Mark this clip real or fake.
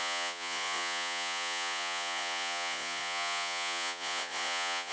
fake